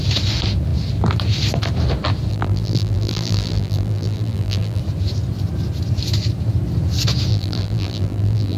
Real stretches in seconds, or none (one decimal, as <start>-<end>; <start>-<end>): 0.0-2.3; 4.8-7.3